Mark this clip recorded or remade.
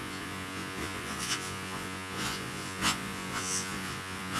remade